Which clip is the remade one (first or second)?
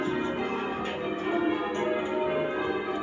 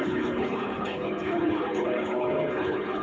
second